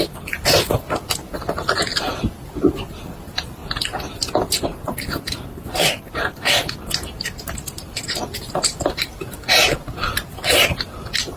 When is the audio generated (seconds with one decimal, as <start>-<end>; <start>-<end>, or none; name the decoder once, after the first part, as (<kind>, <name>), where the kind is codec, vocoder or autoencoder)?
0.0-3.6 (vocoder, BigVGAN v2); 4.5-11.4

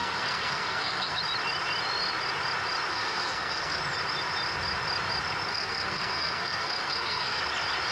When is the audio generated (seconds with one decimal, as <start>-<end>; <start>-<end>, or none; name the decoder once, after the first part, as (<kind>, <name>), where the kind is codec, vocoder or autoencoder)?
0.0-1.2 (codec, SNAC); 2.9-3.8; 5.5-7.4

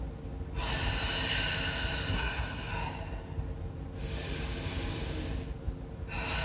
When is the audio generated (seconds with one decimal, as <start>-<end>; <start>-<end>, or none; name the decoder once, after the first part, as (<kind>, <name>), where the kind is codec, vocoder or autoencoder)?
2.1-2.7 (codec, SNAC)

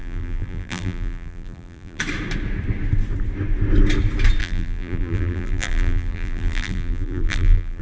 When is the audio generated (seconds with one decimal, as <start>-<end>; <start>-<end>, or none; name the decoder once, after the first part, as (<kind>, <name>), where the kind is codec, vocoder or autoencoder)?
0.0-2.0 (vocoder, BigVGAN v2); 4.4-7.8

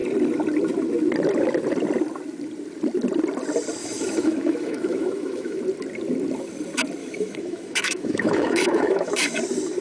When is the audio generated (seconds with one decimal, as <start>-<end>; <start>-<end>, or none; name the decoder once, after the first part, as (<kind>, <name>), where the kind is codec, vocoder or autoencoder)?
3.8-5.6 (autoencoder, DAC-VAE); 7.0-9.4

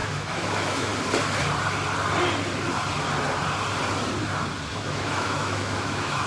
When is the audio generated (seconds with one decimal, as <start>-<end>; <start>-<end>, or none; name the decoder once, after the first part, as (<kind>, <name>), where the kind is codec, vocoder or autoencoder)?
0.0-0.9 (autoencoder, DAC-VAE); 4.7-6.3

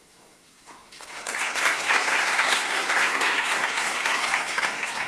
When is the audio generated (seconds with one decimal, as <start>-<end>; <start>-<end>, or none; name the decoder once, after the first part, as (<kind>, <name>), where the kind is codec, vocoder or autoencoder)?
0.0-5.1 (codec, SNAC)

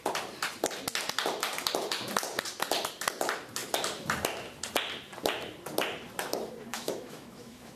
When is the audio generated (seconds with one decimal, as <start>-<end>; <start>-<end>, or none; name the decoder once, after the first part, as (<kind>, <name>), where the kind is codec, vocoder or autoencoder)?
6.7-7.8 (autoencoder, DAC-VAE)